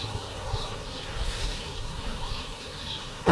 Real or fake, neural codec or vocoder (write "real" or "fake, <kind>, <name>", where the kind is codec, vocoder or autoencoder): fake, codec, SNAC